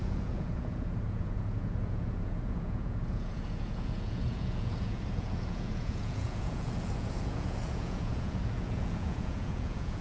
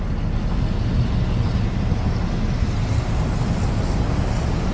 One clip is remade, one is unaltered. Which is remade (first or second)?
first